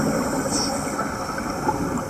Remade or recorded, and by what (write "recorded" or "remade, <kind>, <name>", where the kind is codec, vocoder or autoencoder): recorded